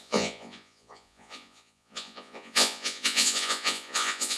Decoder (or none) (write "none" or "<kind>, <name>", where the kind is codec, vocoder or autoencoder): vocoder, Vocos